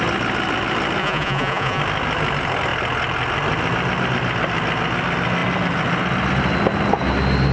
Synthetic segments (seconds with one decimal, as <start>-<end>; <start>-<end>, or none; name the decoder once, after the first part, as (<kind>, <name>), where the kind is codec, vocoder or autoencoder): 1.0-1.8 (vocoder, Vocos)